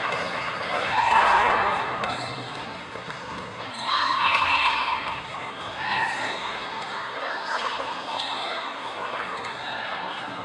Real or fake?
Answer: fake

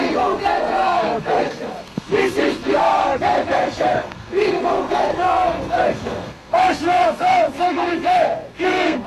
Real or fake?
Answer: fake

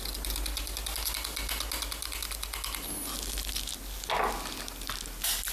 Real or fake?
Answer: real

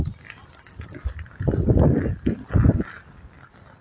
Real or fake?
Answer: real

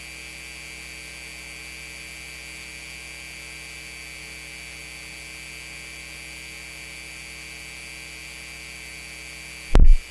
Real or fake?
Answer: real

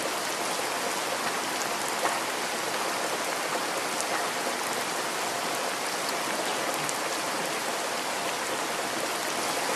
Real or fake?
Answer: real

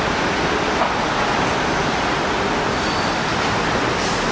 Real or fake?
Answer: real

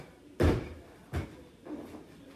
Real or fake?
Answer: real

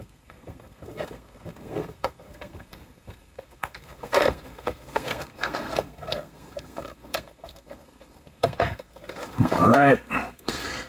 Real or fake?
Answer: fake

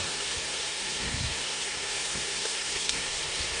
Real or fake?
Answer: fake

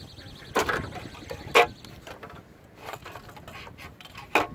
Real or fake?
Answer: real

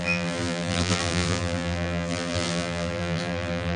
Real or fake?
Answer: fake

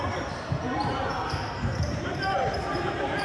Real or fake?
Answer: fake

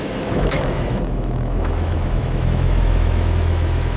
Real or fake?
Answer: fake